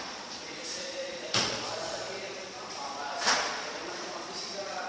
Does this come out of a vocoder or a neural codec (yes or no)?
yes